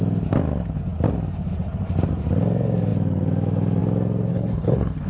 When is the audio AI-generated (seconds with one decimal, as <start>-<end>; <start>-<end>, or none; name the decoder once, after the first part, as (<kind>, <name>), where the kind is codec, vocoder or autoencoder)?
4.3-5.1 (codec, HILCodec)